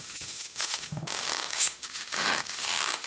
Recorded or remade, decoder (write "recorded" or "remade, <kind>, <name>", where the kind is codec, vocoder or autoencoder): remade, autoencoder, DAC-VAE